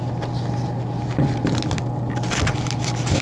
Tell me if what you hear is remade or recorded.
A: recorded